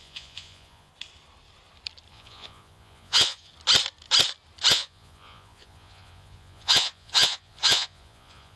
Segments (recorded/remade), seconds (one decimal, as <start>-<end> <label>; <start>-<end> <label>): 0.0-0.9 remade; 0.9-2.1 recorded; 2.1-3.5 remade; 3.5-4.7 recorded; 4.7-8.6 remade